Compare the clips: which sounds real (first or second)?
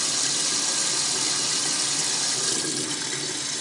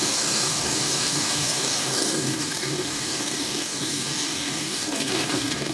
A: first